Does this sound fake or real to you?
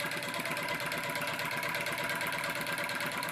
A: real